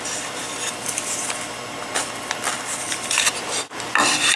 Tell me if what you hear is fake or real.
fake